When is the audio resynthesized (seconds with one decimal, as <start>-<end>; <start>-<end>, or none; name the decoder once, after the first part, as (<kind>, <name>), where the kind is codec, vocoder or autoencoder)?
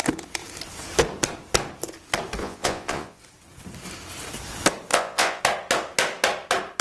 2.4-3.2 (vocoder, Vocos); 4.9-5.4